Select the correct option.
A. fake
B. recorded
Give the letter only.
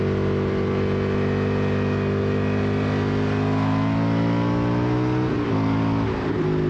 B